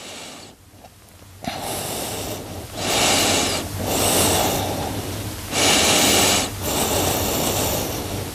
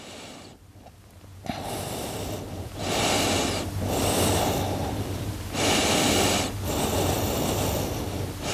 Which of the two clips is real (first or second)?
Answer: first